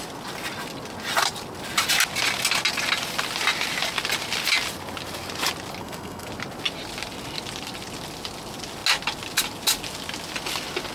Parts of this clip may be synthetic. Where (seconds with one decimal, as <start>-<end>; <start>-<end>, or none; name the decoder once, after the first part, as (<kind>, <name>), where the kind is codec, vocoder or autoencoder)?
5.8-6.3 (codec, SNAC)